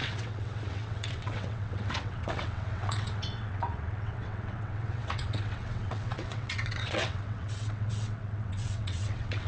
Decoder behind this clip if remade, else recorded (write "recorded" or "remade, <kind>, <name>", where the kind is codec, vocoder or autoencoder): remade, vocoder, WaveNeXt